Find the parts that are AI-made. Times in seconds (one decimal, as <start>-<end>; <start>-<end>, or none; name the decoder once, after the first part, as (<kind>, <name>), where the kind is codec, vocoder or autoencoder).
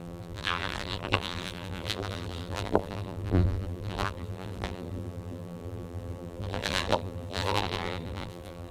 0.0-8.7 (vocoder, BigVGAN v2)